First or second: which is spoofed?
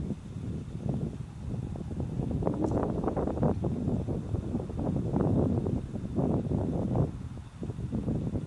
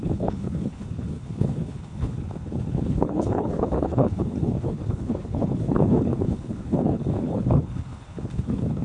second